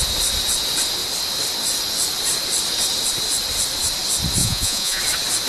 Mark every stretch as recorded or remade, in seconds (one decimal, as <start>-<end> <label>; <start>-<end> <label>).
0.0-4.4 recorded; 4.4-5.0 remade; 5.0-5.5 recorded